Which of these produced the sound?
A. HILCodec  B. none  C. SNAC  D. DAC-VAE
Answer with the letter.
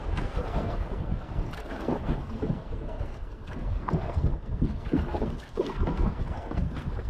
C